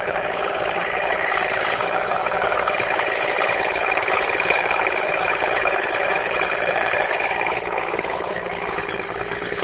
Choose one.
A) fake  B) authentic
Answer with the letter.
A